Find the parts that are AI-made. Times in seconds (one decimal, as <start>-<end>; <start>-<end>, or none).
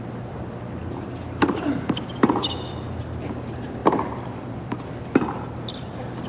3.8-4.9